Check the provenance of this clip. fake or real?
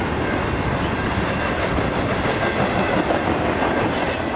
real